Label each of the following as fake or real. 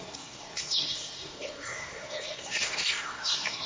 fake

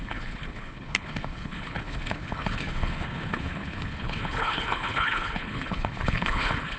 fake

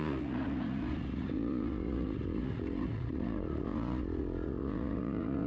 fake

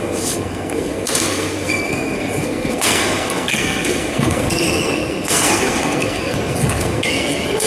fake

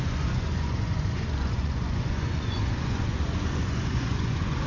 fake